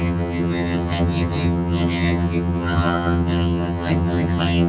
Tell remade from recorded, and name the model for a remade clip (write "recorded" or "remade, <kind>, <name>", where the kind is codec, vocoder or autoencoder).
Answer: remade, vocoder, HiFi-GAN